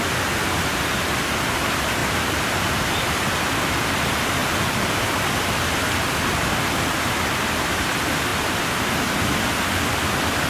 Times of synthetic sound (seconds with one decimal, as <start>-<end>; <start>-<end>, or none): 2.0-3.0; 4.4-5.1; 8.3-8.8